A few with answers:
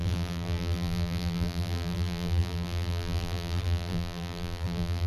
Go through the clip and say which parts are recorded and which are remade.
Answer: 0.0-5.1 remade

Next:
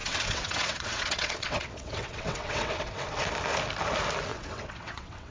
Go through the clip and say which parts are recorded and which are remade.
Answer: 0.0-3.2 remade; 3.2-4.3 recorded; 4.3-5.3 remade

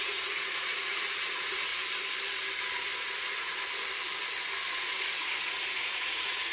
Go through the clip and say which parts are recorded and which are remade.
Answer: 0.0-1.7 remade; 1.7-3.0 recorded; 3.0-3.5 remade; 3.5-4.9 recorded; 4.9-6.5 remade

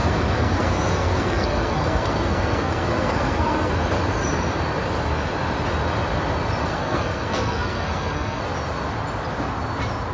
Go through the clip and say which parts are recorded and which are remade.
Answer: 0.0-3.7 remade; 3.7-6.6 recorded; 6.6-8.4 remade; 8.4-10.1 recorded

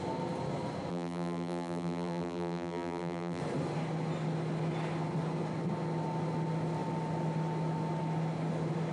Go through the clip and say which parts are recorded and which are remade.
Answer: 0.0-0.9 recorded; 0.9-3.4 remade; 3.4-8.9 recorded

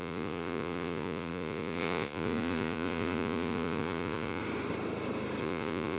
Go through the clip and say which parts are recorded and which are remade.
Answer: 0.0-4.4 remade; 4.4-5.4 recorded; 5.4-6.0 remade

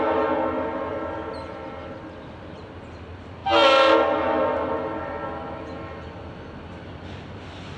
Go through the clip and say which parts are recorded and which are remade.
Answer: 0.0-7.8 recorded

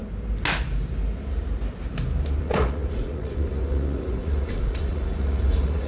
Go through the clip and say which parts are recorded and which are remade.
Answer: 0.0-2.4 recorded; 2.4-5.9 remade